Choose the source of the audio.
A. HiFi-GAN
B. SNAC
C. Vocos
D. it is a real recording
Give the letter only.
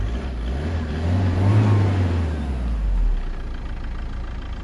D